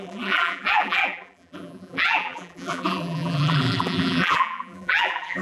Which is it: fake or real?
fake